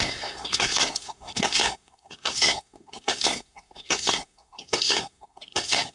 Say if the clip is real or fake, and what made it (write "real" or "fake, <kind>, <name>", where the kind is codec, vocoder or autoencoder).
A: fake, codec, SNAC